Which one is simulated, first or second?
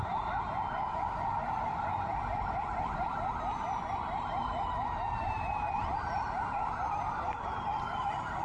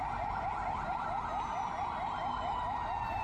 first